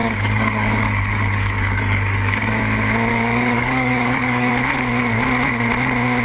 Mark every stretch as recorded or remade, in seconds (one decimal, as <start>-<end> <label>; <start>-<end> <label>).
0.0-2.6 remade; 2.6-3.1 recorded; 3.1-4.5 remade; 4.5-6.2 recorded